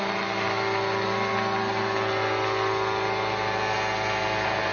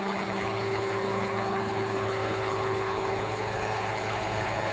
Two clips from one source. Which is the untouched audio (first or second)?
first